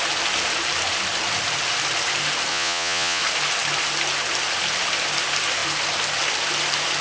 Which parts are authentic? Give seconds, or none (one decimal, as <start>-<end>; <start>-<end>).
0.0-2.5; 3.2-7.0